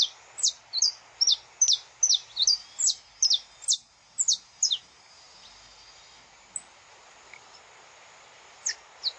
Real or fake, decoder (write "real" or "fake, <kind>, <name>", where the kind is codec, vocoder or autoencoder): real